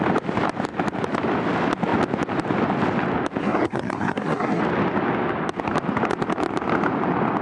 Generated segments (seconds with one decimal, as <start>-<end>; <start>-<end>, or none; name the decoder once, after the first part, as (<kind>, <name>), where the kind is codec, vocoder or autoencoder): 3.4-4.6 (codec, SNAC)